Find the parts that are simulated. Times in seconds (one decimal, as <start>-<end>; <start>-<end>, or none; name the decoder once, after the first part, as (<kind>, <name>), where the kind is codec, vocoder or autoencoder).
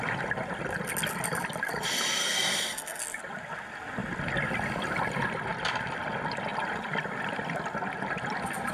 2.2-3.0 (codec, SNAC)